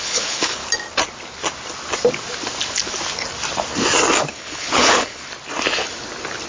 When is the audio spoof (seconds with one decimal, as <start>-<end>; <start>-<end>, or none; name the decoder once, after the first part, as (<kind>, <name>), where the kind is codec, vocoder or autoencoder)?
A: 0.0-0.6 (codec, HILCodec); 4.3-5.2